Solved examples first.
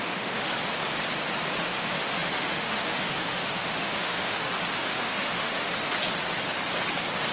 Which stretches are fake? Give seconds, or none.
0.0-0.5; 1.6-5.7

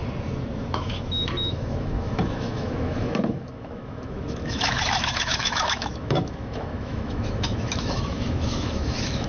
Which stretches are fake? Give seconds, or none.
0.6-9.3

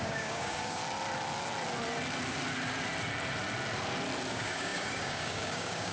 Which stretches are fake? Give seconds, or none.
0.0-0.8; 4.3-5.9

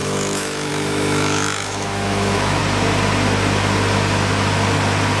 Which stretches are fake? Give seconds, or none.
0.0-2.6

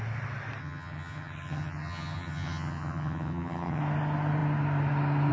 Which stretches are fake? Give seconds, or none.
0.6-3.8

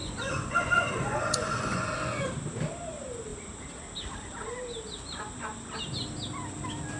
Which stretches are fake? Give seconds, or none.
0.0-2.3